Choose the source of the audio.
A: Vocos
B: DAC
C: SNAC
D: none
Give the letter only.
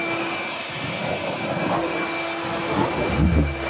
D